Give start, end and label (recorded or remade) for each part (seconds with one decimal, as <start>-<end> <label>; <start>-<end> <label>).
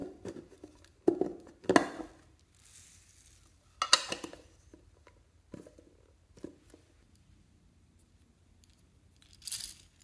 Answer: 0.0-10.0 recorded